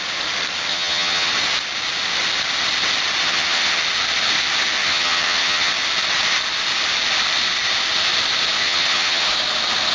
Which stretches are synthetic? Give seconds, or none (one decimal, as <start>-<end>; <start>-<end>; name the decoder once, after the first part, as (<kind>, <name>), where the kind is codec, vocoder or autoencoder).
0.7-1.3 (vocoder, HiFi-GAN); 3.2-3.8; 4.8-5.7; 8.6-9.3